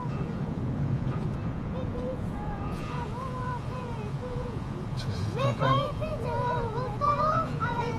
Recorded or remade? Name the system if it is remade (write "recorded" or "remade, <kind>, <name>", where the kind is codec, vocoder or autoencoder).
remade, vocoder, Vocos